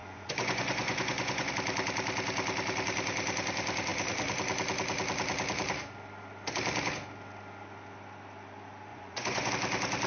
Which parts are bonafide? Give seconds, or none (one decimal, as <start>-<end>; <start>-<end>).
1.5-8.9; 9.5-10.1

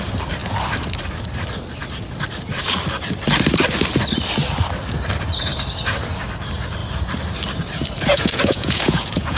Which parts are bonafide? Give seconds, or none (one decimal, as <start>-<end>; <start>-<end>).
0.0-8.1